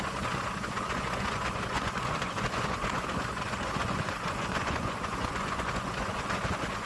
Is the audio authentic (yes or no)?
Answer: no